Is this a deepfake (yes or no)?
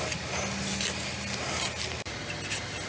no